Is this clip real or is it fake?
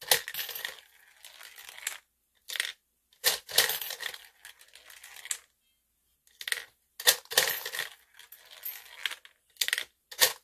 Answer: real